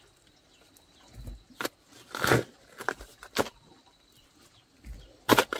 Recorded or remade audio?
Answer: recorded